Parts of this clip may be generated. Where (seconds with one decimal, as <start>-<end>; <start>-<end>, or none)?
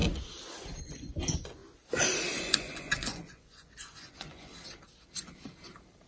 0.8-1.6; 2.4-4.5